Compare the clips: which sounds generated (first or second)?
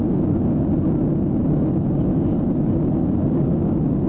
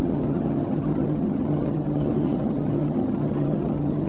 second